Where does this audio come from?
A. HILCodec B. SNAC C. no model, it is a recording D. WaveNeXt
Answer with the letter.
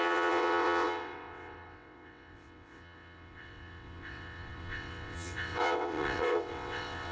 D